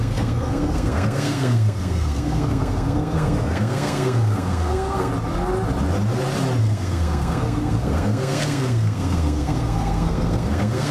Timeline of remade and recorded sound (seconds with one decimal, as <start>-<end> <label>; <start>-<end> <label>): 0.0-5.1 remade; 5.1-6.6 recorded; 6.6-10.9 remade